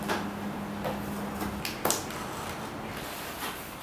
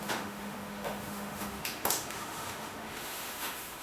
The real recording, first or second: first